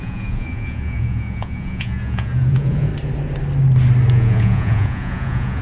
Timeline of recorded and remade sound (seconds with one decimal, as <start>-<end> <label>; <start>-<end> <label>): 0.0-2.9 remade; 2.9-4.1 recorded; 4.1-5.6 remade